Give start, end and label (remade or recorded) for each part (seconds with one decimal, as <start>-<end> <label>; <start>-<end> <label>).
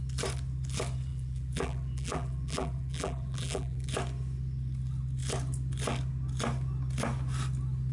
0.0-1.1 recorded; 1.1-3.9 remade; 3.9-7.9 recorded